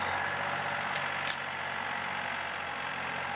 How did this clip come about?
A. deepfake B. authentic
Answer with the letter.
B